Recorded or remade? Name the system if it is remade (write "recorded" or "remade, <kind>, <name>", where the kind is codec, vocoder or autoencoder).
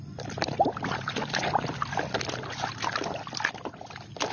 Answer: recorded